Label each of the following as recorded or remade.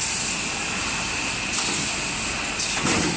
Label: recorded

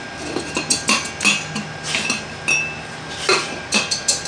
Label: recorded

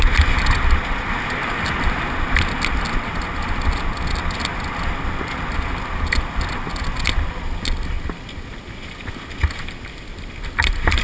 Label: recorded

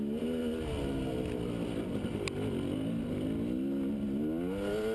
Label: recorded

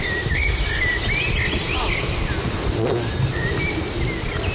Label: recorded